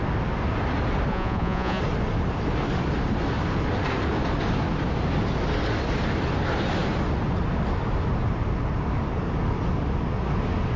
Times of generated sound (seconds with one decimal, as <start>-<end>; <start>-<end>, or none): 1.1-1.8